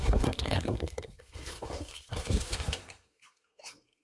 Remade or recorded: remade